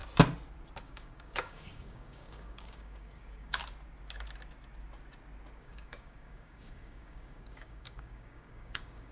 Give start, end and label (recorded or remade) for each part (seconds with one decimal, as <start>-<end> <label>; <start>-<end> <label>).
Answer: 0.0-0.8 recorded; 0.8-3.6 remade; 3.6-5.6 recorded; 5.6-9.1 remade